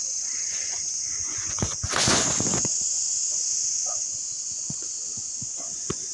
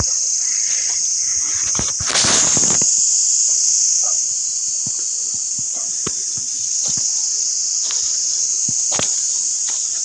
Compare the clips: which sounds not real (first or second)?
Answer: first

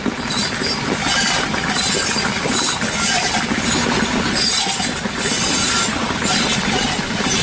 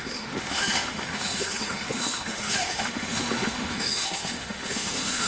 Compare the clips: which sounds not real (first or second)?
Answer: second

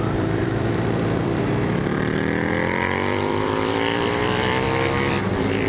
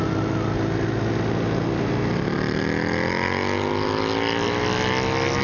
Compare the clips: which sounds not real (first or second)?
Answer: first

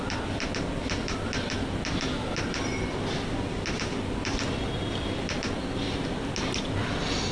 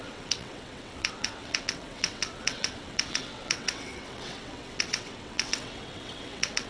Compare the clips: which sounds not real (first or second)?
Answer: second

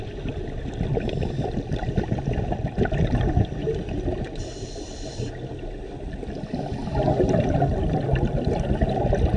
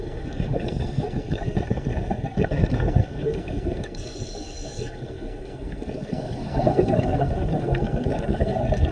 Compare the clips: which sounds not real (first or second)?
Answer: second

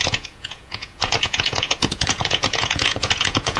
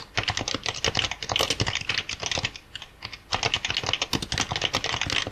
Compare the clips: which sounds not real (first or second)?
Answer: first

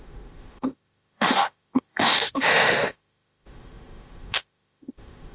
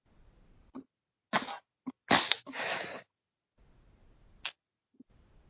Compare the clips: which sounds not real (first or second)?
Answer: first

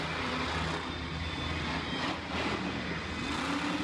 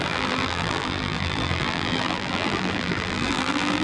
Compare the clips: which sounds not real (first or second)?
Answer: second